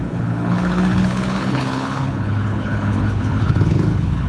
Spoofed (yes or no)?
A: yes